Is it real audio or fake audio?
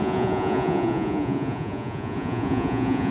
fake